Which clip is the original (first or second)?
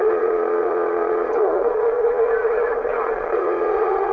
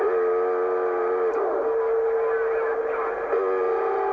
second